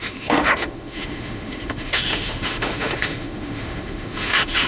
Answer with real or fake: fake